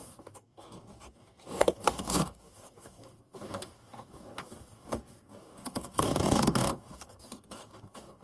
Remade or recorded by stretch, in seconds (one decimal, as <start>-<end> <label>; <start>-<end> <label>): 0.0-8.2 remade